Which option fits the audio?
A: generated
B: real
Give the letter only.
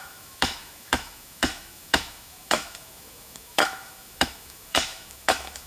A